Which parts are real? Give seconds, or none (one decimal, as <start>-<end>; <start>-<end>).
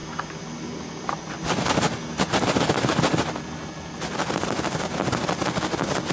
0.0-6.1